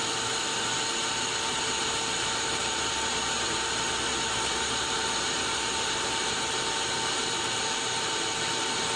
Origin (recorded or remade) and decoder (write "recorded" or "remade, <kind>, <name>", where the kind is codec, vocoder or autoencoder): remade, vocoder, BigVGAN v2